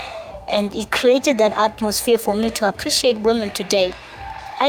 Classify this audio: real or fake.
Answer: fake